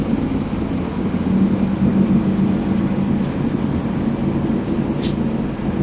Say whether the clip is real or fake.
real